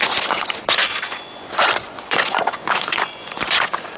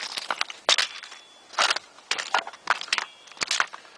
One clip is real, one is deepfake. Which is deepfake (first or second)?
first